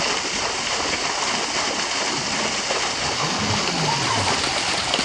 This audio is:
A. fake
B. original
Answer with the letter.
B